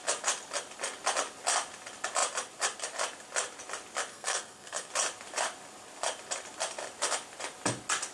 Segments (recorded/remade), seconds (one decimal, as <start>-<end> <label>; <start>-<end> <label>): 0.0-4.1 recorded; 4.1-4.9 remade; 4.9-8.1 recorded